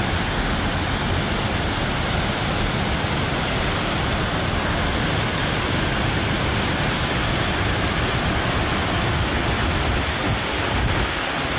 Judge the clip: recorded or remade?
recorded